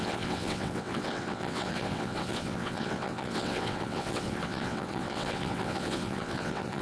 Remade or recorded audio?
remade